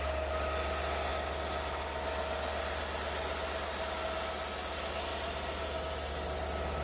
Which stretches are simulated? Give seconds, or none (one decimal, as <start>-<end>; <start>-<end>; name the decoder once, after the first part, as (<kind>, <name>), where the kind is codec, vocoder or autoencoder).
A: none